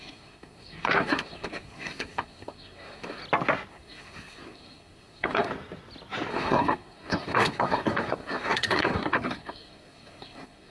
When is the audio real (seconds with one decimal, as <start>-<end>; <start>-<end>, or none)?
3.2-3.7; 5.5-6.3